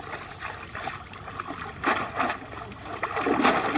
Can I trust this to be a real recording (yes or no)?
yes